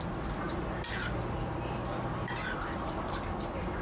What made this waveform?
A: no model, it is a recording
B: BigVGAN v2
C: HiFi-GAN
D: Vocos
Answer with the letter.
A